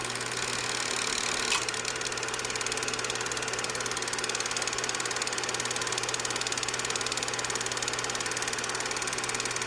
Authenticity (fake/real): real